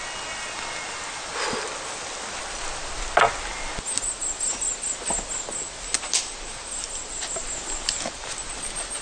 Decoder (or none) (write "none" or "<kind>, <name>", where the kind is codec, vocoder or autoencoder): none